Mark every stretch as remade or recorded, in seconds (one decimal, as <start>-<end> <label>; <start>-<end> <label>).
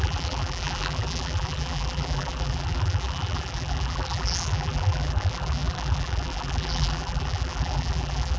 0.0-8.4 remade